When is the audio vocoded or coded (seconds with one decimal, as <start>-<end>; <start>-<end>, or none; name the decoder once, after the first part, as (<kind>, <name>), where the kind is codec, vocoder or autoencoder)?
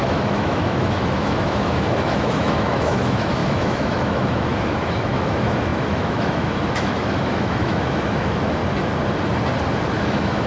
0.0-8.6 (autoencoder, DAC-VAE); 10.0-10.5